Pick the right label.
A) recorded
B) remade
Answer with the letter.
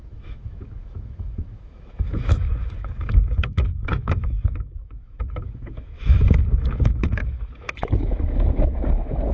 B